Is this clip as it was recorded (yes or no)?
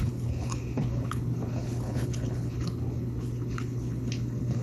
no